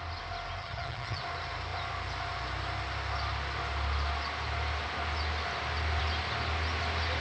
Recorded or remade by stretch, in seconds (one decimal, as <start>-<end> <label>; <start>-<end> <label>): 0.0-0.6 recorded; 0.6-1.2 remade; 1.2-7.2 recorded